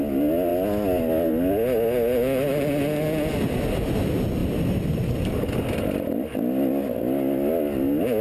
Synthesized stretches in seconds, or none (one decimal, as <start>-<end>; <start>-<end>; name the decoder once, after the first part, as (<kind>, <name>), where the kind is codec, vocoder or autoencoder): none